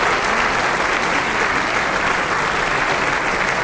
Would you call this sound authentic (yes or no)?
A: yes